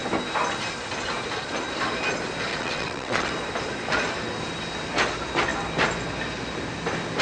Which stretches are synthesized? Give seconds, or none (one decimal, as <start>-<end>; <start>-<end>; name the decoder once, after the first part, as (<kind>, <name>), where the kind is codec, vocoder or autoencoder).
2.5-3.3 (vocoder, WaveNeXt)